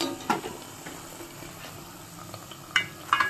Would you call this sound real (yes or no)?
yes